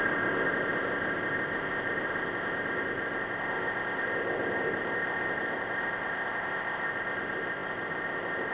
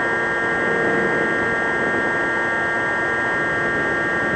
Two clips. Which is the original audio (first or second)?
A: second